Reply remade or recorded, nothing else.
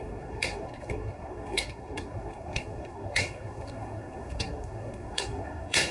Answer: remade